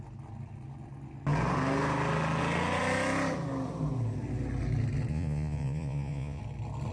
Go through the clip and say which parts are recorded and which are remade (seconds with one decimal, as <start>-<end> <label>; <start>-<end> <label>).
0.0-5.1 recorded; 5.1-6.4 remade; 6.4-6.9 recorded